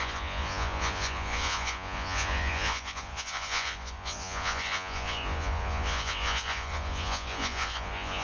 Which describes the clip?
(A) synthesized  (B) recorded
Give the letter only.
A